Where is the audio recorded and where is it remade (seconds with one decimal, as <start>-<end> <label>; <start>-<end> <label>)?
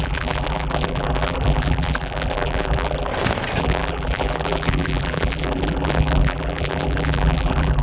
0.0-3.1 remade; 3.1-3.6 recorded; 3.6-7.8 remade